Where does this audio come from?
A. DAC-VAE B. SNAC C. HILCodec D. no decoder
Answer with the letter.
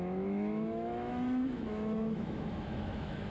A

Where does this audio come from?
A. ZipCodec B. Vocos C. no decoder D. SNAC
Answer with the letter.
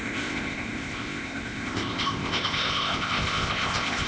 A